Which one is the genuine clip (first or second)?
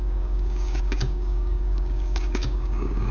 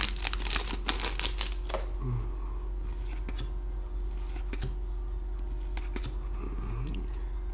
second